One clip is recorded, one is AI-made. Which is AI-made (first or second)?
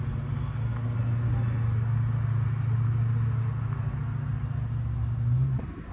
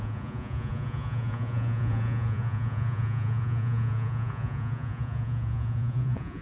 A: second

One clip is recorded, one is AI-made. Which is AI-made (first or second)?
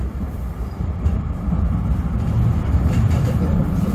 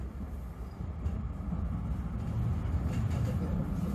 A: first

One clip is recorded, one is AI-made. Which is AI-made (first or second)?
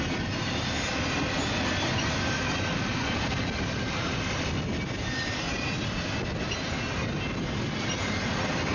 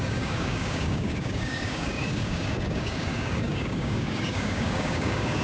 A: second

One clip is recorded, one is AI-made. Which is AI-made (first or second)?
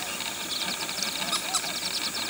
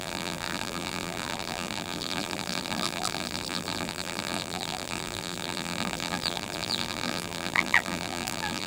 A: second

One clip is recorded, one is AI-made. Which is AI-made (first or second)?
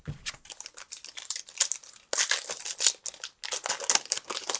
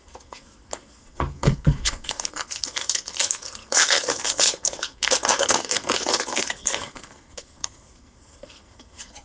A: second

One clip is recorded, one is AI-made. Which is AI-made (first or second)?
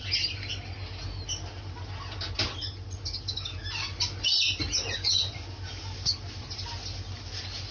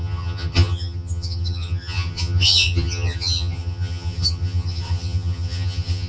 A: second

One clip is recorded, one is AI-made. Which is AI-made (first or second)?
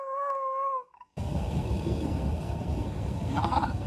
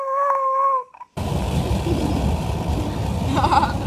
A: first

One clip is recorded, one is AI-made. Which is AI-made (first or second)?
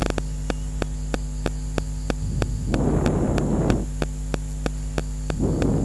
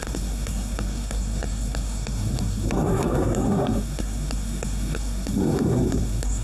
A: second